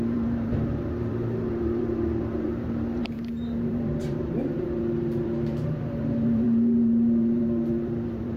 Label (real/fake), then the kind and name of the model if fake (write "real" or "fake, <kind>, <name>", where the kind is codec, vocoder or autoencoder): fake, vocoder, BigVGAN v2